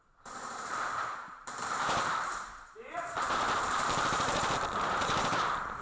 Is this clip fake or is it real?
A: fake